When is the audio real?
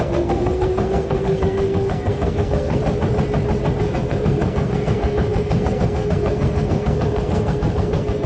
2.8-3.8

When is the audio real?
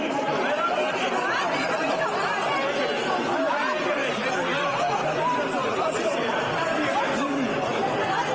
0.0-8.3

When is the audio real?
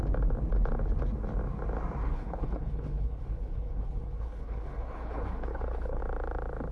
0.0-2.0; 6.0-6.7